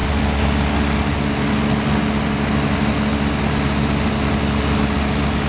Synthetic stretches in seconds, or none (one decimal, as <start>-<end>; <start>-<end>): none